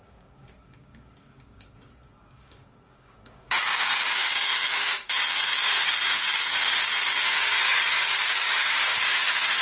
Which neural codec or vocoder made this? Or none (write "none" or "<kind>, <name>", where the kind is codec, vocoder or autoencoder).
codec, DAC